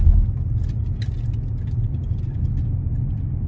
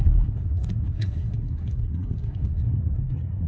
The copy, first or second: second